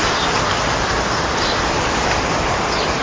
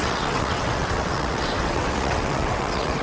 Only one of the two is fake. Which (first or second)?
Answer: second